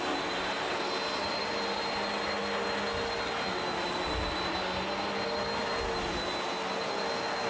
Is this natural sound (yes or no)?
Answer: yes